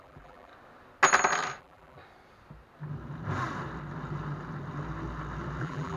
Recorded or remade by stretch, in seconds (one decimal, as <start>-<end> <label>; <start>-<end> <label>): 0.0-0.5 remade; 0.5-1.6 recorded; 1.6-2.0 remade; 2.0-5.6 recorded; 5.6-6.0 remade